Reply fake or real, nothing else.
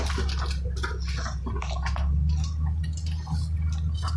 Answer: real